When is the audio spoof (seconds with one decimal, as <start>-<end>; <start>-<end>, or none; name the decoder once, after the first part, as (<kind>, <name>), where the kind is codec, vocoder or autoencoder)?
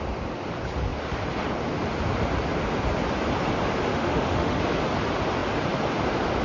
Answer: 3.9-4.6 (autoencoder, DAC-VAE)